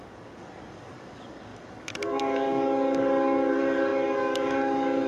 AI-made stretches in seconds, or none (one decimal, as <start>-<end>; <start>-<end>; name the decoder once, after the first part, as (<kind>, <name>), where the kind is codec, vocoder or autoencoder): 0.0-5.1 (codec, DAC)